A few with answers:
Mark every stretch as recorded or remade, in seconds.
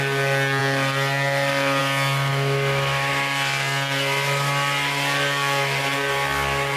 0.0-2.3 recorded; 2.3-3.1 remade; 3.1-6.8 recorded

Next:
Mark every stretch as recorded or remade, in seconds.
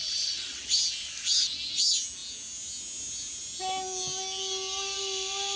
0.0-0.6 remade; 0.6-5.6 recorded